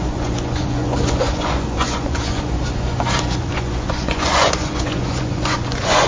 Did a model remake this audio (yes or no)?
yes